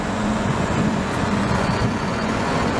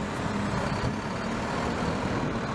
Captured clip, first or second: second